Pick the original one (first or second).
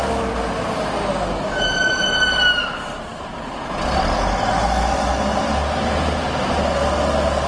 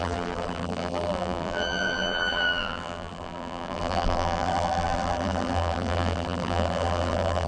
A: first